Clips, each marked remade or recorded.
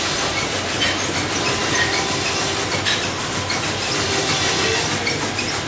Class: recorded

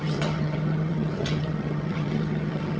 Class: remade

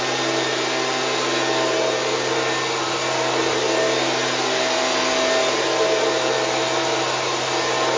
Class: recorded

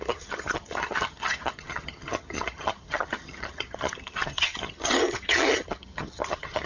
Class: remade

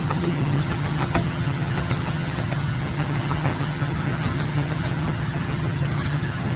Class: remade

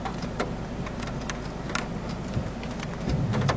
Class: recorded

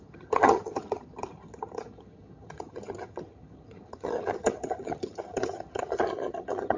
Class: remade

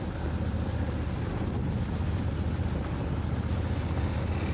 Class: recorded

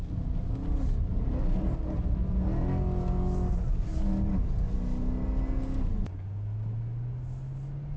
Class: recorded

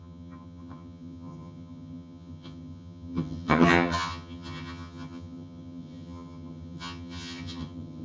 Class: remade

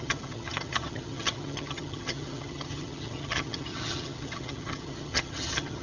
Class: remade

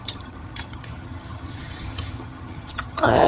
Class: remade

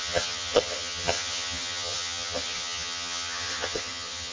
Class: remade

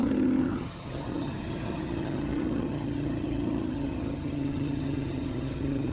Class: remade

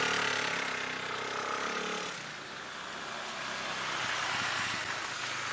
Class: recorded